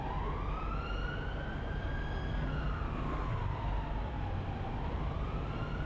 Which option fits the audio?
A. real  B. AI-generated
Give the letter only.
A